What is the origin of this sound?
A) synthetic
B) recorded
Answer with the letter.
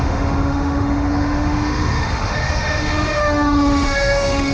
A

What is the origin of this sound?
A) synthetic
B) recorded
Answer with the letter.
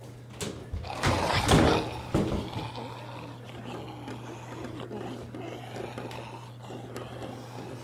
B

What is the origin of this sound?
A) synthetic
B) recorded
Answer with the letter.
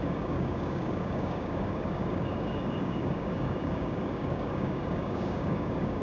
A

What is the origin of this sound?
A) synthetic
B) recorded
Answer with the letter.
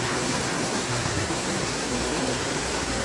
A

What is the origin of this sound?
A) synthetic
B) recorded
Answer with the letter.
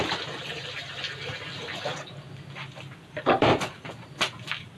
A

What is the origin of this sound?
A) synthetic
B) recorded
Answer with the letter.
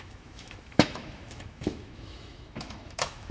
A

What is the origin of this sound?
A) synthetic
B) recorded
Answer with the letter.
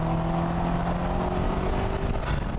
B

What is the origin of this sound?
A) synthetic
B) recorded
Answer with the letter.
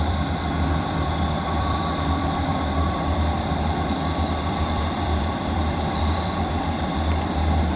A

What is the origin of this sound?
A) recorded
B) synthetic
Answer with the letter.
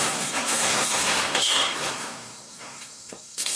B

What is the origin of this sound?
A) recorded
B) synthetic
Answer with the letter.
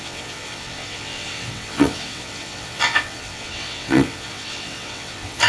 B